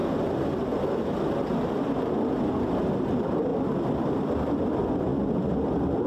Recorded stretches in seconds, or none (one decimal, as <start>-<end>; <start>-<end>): 0.0-6.1